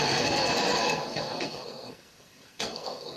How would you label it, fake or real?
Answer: fake